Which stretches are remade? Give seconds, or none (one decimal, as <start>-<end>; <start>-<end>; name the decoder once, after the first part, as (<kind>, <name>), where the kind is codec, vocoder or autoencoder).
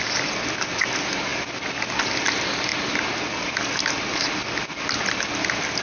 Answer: none